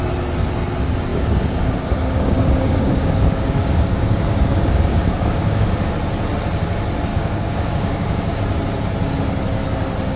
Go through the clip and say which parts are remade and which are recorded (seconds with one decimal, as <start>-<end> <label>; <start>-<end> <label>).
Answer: 0.0-1.1 recorded; 1.1-5.9 remade; 5.9-7.1 recorded; 7.1-8.4 remade; 8.4-10.2 recorded